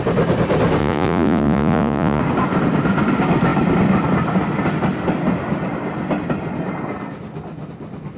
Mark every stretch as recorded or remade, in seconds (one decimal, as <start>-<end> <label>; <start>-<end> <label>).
0.0-0.8 recorded; 0.8-2.2 remade; 2.2-8.2 recorded